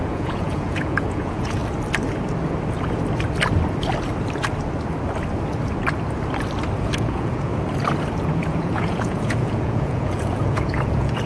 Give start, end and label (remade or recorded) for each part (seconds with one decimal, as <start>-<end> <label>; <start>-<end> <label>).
0.0-1.6 remade; 1.6-6.8 recorded; 6.8-7.5 remade; 7.5-8.3 recorded; 8.3-11.3 remade